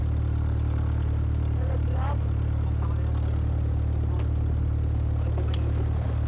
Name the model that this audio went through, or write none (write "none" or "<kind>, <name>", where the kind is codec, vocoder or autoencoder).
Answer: none